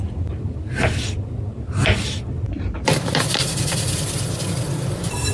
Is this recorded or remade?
remade